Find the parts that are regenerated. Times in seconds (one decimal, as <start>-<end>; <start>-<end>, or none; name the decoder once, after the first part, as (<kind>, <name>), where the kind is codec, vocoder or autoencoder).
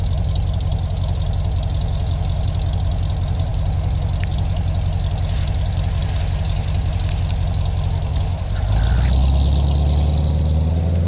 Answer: none